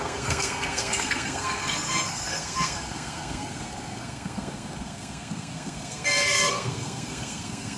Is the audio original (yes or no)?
no